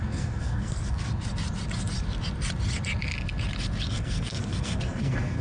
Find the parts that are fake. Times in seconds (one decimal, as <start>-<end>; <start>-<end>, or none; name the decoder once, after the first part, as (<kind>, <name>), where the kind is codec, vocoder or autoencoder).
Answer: 0.0-1.1 (codec, SNAC); 3.9-5.4